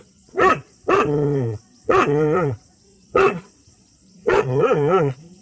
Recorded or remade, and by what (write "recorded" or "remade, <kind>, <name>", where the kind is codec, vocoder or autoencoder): remade, vocoder, Vocos